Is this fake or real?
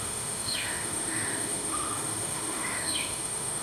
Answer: fake